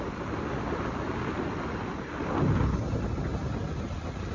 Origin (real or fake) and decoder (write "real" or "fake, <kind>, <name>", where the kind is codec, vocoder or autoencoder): real